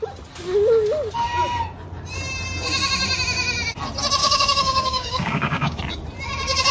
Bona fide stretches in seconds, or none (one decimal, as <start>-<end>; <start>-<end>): 0.0-4.2; 5.8-6.7